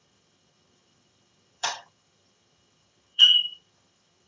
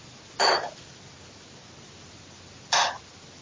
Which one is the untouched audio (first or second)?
second